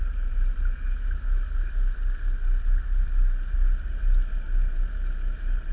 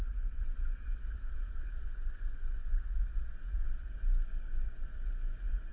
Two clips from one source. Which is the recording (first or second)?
first